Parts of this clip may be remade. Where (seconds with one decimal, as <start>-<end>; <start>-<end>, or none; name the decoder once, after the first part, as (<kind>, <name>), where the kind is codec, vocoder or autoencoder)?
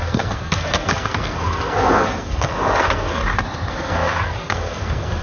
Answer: 0.0-3.2 (codec, SNAC); 3.7-5.2